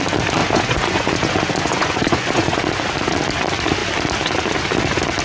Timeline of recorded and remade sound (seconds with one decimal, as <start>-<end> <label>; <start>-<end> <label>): 0.0-0.4 recorded; 0.4-2.6 remade; 2.6-5.2 recorded